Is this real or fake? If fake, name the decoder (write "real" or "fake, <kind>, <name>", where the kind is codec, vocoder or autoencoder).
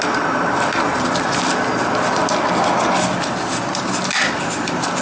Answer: real